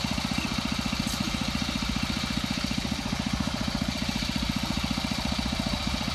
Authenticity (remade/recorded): recorded